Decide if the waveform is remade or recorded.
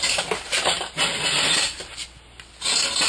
recorded